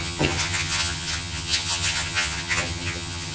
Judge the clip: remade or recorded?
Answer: remade